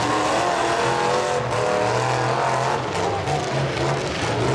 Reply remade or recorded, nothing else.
recorded